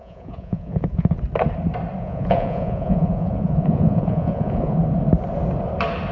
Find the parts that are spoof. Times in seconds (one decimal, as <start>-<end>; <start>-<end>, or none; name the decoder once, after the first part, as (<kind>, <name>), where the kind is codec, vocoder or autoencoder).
0.0-1.1 (vocoder, Vocos); 2.0-4.8